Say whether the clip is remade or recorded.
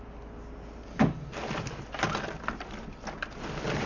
recorded